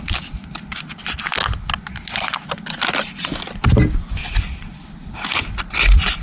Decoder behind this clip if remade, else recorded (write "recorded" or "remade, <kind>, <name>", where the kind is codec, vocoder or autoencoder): recorded